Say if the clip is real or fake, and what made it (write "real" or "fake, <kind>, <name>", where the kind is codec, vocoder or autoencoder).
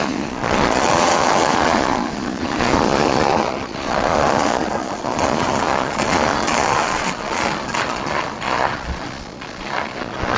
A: fake, vocoder, Vocos